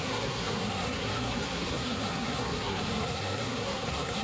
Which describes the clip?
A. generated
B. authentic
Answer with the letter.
A